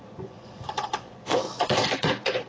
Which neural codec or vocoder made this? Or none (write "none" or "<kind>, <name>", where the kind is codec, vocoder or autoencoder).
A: vocoder, Vocos